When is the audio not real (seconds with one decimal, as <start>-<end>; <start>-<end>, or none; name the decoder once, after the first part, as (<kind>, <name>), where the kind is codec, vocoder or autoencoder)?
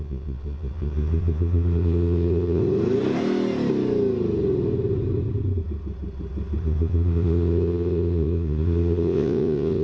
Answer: 0.0-2.6 (vocoder, Vocos); 6.6-9.8